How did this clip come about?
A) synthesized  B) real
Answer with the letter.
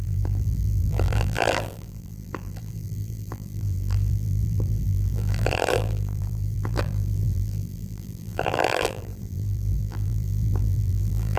A